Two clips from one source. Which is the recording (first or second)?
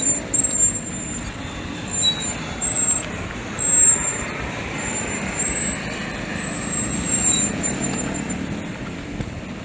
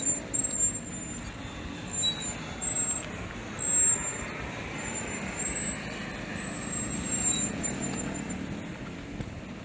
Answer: second